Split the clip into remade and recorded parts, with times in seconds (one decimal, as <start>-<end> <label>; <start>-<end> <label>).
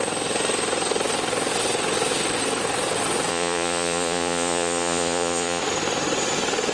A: 0.0-3.3 recorded; 3.3-5.6 remade; 5.6-6.7 recorded